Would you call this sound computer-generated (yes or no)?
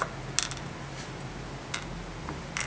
no